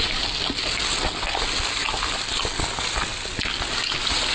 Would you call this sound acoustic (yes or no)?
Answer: yes